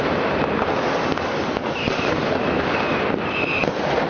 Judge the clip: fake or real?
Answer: real